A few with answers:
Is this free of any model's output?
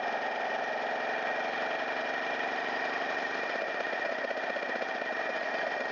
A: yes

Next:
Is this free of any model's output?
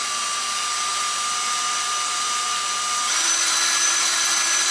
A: no